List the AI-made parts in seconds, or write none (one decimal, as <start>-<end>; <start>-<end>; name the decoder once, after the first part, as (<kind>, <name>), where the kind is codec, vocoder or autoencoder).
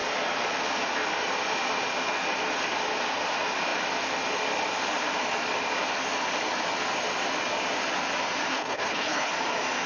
8.5-9.3 (codec, HILCodec)